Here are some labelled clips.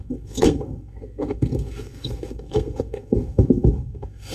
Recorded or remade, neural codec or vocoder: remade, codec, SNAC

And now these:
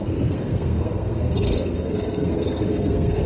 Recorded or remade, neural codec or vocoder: remade, codec, SNAC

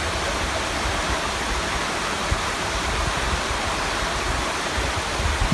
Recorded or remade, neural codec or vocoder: recorded